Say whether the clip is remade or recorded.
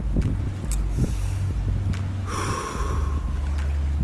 recorded